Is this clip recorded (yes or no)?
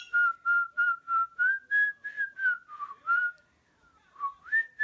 yes